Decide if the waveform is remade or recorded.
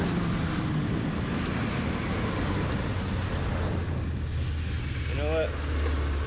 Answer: recorded